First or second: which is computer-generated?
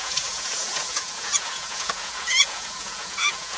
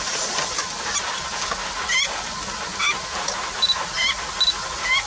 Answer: first